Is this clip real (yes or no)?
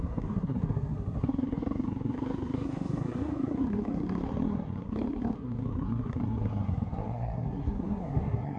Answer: no